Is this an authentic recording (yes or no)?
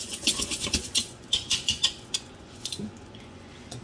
no